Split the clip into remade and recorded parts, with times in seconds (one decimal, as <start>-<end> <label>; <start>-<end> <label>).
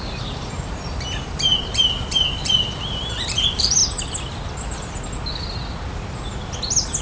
0.0-3.8 remade; 3.8-7.0 recorded